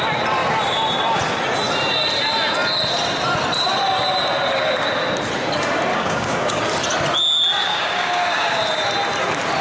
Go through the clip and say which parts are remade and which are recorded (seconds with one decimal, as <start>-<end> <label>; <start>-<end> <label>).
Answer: 0.0-5.9 recorded; 5.9-6.6 remade; 6.6-7.7 recorded; 7.7-8.6 remade; 8.6-9.6 recorded